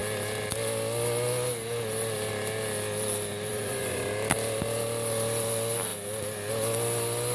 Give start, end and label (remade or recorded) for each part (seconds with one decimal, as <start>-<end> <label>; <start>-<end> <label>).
0.0-3.5 recorded; 3.5-4.1 remade; 4.1-7.3 recorded